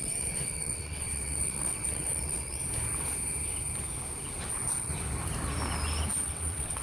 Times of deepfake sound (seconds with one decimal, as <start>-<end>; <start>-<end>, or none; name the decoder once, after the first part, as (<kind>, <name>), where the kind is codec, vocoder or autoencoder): 0.0-2.6 (vocoder, WaveNeXt); 4.5-4.9; 6.1-6.8